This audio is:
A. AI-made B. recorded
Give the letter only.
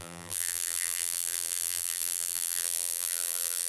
A